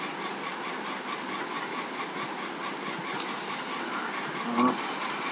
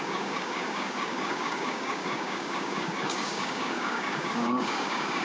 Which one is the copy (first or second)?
second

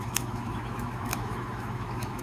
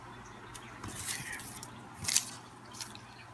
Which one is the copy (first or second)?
first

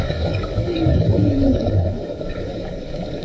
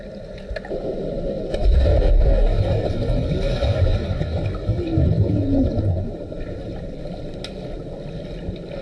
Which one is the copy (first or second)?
first